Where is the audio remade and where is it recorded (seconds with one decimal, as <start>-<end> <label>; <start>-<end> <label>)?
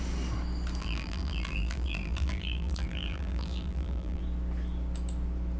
0.0-0.8 recorded; 0.8-4.2 remade; 4.2-5.6 recorded